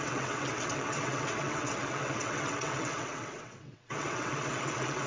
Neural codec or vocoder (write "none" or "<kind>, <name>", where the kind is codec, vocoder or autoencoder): vocoder, WaveNeXt